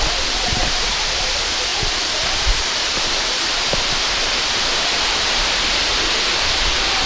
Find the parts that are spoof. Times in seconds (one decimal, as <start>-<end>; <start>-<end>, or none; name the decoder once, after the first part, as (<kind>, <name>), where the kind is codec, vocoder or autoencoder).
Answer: 1.7-5.6 (vocoder, BigVGAN v2)